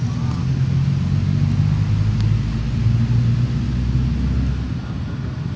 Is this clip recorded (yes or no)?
yes